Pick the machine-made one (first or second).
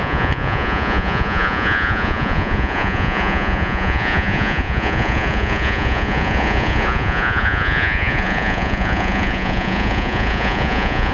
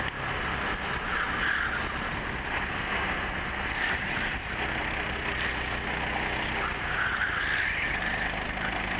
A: first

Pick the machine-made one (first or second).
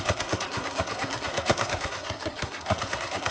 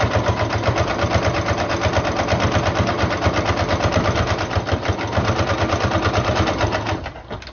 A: first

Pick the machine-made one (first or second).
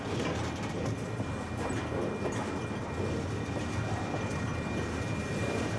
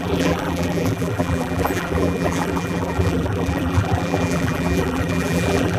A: second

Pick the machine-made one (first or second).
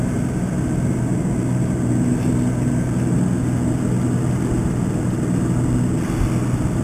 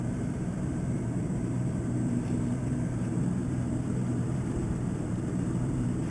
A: second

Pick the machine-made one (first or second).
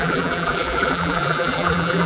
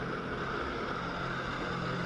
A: first